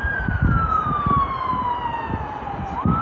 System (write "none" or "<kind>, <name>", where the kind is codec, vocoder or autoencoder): none